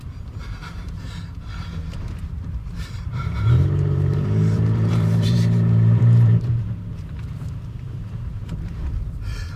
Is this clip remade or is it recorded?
remade